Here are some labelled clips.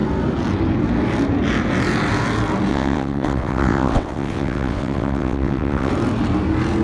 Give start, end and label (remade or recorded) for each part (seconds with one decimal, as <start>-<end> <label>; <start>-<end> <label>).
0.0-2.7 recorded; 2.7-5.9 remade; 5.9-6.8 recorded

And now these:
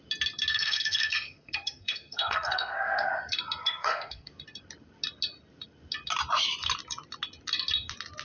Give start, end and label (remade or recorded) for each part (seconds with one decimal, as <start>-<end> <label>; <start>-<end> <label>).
0.0-0.5 recorded; 0.5-3.1 remade; 3.1-3.6 recorded; 3.6-4.3 remade; 4.3-8.2 recorded

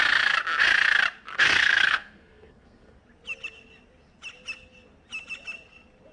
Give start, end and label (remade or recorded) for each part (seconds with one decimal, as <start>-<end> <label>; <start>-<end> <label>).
0.0-1.3 recorded; 1.3-3.0 remade; 3.0-6.1 recorded

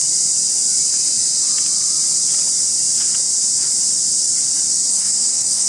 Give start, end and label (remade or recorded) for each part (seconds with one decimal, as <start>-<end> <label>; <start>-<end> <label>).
0.0-4.9 recorded; 4.9-5.7 remade

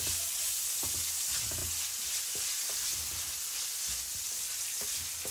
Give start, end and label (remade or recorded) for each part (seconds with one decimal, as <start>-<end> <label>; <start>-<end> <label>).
0.0-5.3 recorded

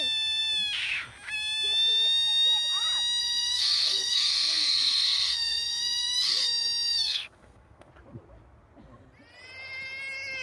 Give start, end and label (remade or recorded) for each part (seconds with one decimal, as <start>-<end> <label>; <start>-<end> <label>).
0.0-3.2 recorded; 3.2-7.9 remade; 7.9-10.4 recorded

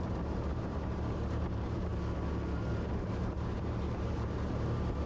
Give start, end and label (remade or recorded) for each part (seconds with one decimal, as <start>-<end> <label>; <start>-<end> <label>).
0.0-1.9 remade; 1.9-2.9 recorded; 2.9-5.1 remade